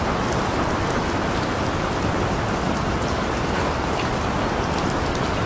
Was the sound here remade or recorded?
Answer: recorded